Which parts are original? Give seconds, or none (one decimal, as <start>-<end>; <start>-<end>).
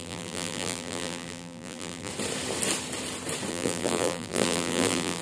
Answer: 2.1-3.5